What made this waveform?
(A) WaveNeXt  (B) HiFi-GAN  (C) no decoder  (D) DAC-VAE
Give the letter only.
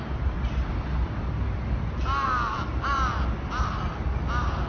C